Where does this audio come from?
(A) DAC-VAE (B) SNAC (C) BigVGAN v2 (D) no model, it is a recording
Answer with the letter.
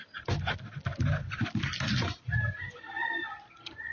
D